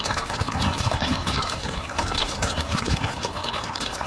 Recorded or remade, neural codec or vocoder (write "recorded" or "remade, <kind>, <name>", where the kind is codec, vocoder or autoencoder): remade, codec, SNAC